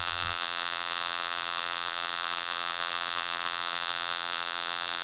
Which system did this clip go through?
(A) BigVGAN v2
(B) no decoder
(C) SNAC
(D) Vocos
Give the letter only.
A